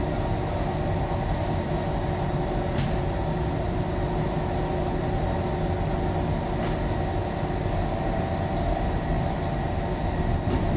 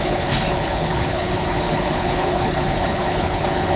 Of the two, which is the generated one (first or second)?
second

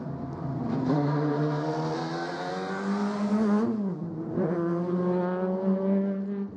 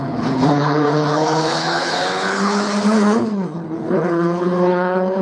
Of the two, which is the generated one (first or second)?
second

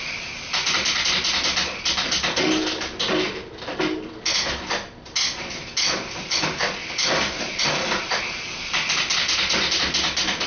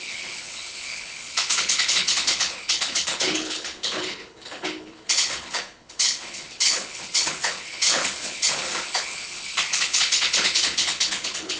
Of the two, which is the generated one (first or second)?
second